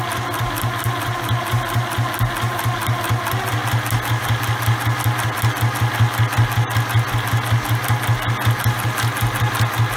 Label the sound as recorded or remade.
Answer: recorded